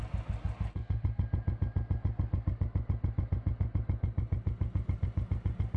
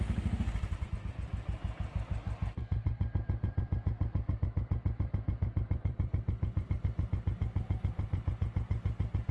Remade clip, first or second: second